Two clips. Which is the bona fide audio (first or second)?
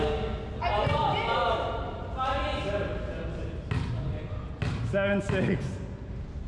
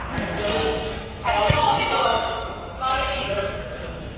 first